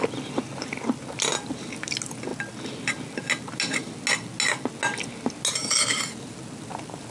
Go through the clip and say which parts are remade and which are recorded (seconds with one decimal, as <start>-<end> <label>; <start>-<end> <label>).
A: 0.0-7.1 recorded